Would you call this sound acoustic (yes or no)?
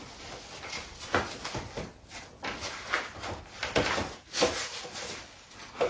yes